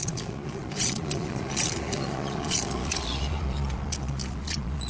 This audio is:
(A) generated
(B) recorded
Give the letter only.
A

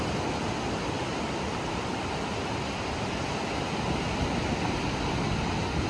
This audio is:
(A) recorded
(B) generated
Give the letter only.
A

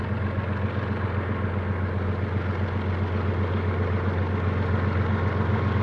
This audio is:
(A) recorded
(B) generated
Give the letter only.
A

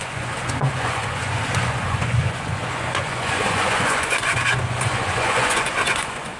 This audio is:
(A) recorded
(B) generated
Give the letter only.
B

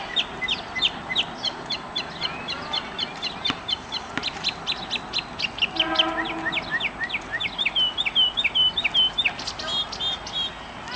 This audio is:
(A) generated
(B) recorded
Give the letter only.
B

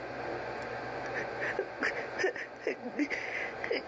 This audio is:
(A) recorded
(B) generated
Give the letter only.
B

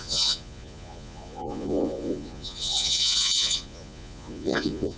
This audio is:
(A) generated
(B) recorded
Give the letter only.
A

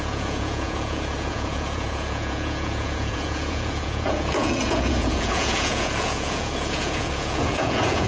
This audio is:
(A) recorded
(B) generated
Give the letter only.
B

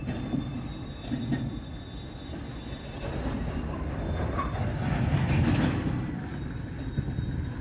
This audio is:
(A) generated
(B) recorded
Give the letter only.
B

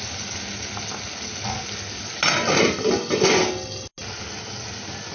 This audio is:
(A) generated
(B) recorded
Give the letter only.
B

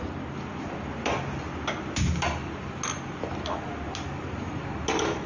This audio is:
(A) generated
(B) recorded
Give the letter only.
B